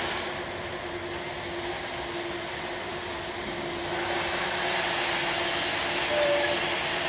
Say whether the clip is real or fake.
real